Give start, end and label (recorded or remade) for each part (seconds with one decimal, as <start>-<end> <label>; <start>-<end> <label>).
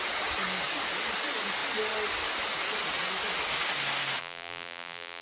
0.0-4.2 recorded; 4.2-5.2 remade